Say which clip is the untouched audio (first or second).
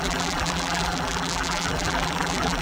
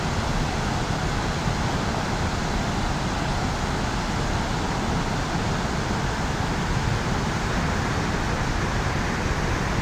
second